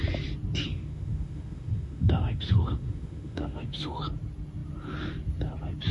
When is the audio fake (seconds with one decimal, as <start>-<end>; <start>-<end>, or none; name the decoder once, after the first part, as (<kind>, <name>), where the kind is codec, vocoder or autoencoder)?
0.6-4.0 (autoencoder, DAC-VAE)